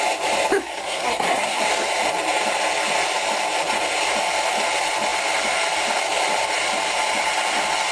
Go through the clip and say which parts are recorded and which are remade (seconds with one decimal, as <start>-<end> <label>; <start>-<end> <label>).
0.0-0.6 recorded; 0.6-1.6 remade; 1.6-7.9 recorded